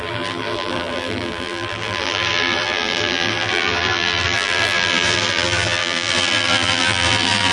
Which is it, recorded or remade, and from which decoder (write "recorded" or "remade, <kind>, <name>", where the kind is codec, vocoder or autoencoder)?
remade, vocoder, BigVGAN v2